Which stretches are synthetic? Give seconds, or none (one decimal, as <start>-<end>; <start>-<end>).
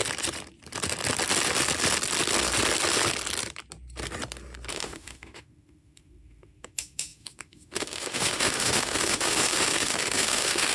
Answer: 4.7-10.7